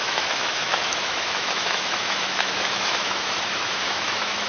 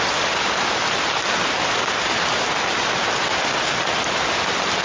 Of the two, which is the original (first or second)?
second